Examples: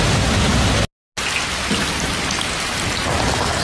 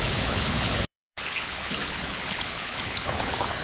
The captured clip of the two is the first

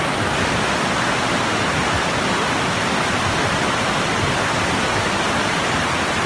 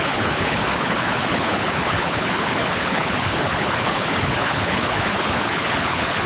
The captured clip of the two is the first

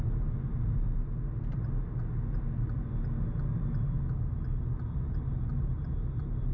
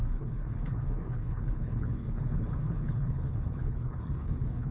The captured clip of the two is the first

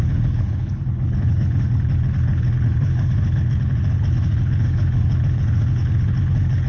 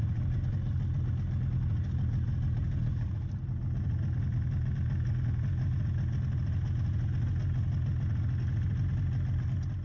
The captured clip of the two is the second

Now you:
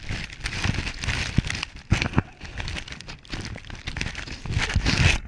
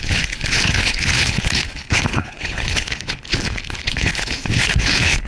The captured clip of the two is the first